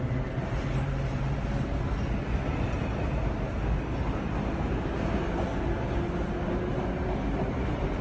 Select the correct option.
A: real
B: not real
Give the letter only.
A